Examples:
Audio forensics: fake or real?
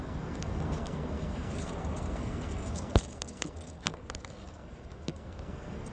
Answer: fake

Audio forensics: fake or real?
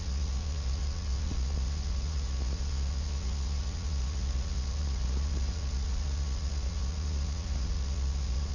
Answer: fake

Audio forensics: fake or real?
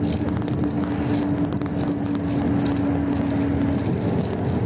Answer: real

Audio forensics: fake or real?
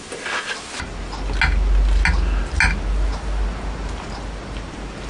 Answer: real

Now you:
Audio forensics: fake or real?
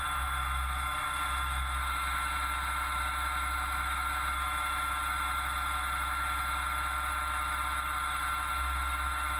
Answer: fake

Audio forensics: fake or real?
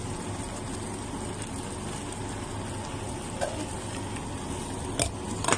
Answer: real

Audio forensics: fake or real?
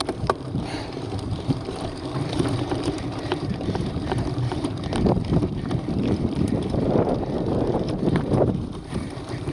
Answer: fake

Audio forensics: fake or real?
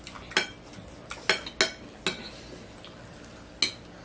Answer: real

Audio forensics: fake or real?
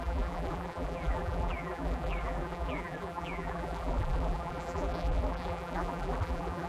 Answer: fake